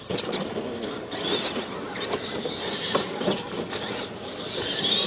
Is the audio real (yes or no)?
yes